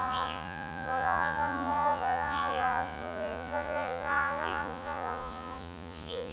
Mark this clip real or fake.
fake